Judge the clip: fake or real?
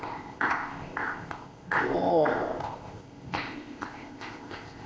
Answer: fake